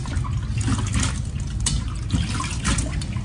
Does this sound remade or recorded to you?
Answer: recorded